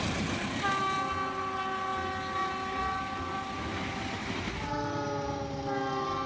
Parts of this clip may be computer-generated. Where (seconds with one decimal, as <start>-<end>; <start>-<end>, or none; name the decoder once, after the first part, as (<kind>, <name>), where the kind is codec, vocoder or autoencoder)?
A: none